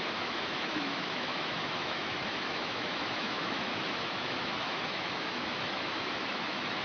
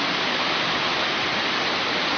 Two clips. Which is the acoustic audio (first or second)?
second